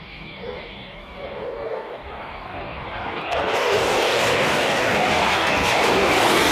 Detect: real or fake fake